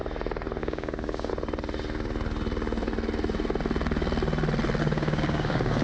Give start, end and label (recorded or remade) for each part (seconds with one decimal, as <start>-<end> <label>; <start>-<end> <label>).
0.0-0.6 recorded; 0.6-1.3 remade; 1.3-4.8 recorded; 4.8-5.8 remade